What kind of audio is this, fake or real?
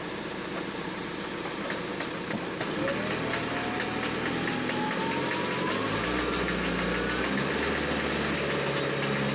real